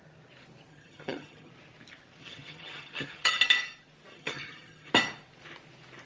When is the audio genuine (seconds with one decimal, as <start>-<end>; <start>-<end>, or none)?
0.0-0.7; 1.5-2.2; 3.4-4.1; 4.9-6.1